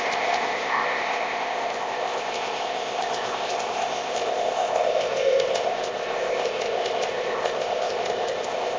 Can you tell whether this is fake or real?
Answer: fake